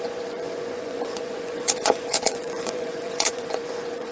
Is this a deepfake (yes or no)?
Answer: yes